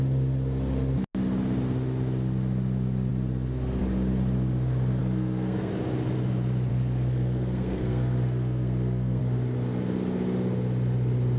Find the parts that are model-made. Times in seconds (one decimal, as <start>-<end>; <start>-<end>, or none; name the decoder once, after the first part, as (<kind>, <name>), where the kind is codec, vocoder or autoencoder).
5.0-5.7 (codec, SNAC); 6.7-9.2